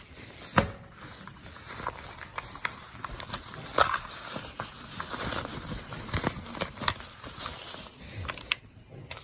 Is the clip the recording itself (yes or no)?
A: yes